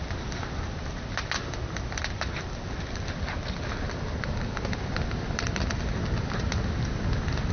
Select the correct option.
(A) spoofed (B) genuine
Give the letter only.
B